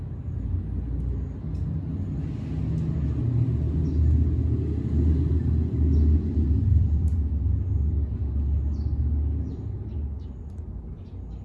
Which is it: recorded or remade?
recorded